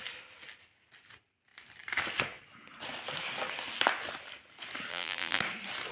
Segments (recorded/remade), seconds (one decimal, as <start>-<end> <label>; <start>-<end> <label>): 0.0-4.9 recorded; 4.9-5.4 remade; 5.4-5.9 recorded